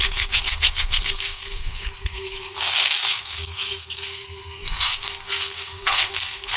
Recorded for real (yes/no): no